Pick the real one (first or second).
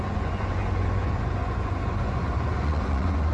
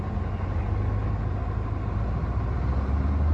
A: second